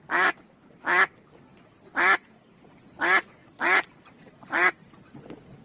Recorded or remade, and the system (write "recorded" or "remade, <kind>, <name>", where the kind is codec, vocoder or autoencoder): remade, vocoder, BigVGAN v2